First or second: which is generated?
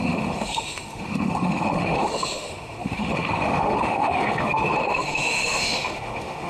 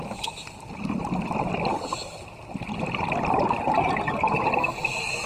first